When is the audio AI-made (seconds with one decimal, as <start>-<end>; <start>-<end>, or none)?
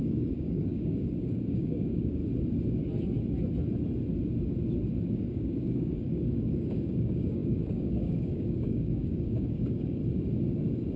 0.0-2.2; 5.1-10.0